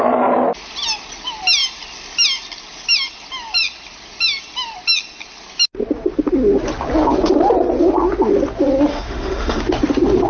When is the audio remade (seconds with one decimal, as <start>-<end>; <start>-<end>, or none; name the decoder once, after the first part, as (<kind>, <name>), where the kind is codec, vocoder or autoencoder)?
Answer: 8.9-9.6 (autoencoder, DAC-VAE)